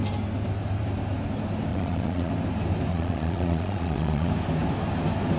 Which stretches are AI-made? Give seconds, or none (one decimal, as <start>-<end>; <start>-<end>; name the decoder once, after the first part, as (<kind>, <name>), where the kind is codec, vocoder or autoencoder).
1.7-2.3 (vocoder, Vocos); 2.9-4.3